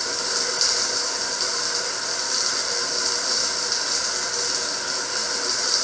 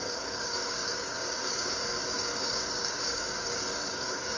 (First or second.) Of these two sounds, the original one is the first